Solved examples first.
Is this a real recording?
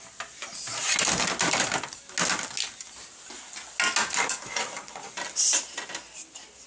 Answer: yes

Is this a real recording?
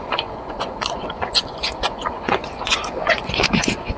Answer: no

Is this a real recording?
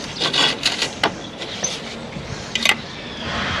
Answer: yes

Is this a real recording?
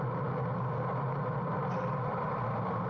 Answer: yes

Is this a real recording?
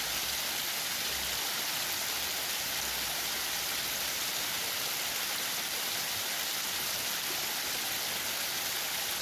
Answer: yes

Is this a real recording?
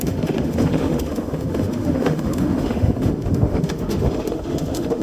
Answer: no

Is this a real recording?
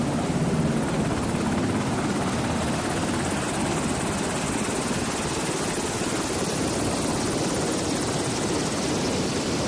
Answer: yes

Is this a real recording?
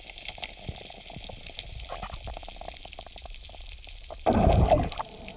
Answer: yes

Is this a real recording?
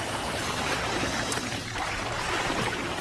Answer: no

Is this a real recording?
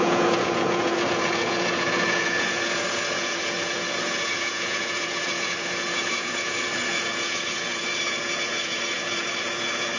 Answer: no